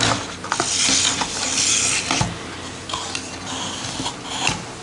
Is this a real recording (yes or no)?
yes